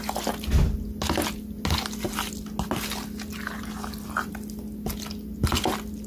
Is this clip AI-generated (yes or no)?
no